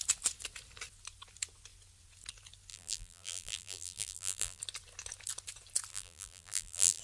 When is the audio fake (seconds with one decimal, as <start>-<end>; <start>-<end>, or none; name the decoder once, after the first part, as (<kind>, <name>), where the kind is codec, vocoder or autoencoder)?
2.7-4.6 (vocoder, BigVGAN v2); 5.9-7.0